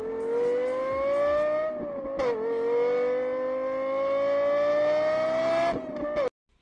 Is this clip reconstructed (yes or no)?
no